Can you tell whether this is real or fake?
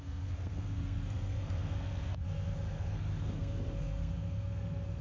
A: fake